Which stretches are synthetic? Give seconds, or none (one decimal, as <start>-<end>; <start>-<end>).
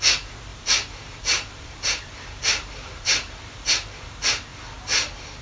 0.5-3.7